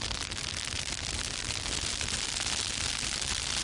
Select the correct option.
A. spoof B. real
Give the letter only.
B